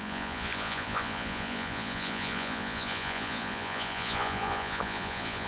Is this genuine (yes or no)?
no